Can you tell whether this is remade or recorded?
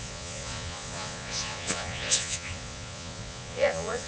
remade